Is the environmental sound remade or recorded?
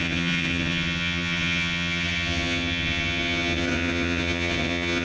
remade